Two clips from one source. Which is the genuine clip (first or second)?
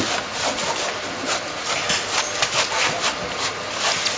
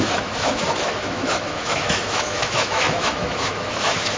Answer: first